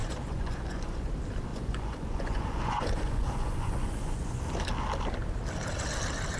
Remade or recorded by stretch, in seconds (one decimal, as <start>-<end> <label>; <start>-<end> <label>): 0.0-1.1 remade; 1.1-1.5 recorded; 1.5-4.4 remade; 4.4-6.4 recorded